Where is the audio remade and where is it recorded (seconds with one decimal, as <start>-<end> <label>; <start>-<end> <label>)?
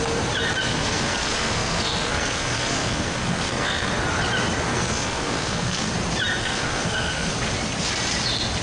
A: 0.0-0.6 recorded; 0.6-3.9 remade; 3.9-4.7 recorded; 4.7-5.9 remade; 5.9-6.4 recorded; 6.4-7.3 remade; 7.3-8.6 recorded